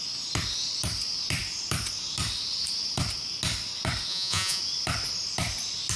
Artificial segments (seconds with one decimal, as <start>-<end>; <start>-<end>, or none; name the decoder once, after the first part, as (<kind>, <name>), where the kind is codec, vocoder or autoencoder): 4.1-4.6 (vocoder, Vocos)